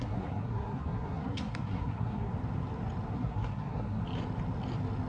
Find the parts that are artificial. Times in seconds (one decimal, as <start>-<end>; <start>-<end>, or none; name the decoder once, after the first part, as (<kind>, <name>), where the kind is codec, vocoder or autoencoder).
0.0-2.3 (codec, SNAC); 3.1-4.0